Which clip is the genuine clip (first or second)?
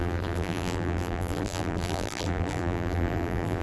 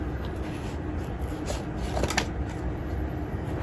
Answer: second